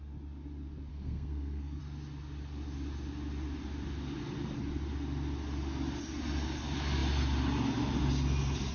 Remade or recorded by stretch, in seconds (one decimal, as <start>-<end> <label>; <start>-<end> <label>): 0.0-0.9 recorded; 0.9-1.8 remade; 1.8-8.7 recorded